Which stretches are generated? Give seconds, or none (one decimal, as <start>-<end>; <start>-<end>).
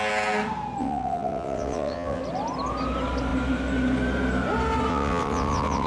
0.8-2.2; 4.9-5.9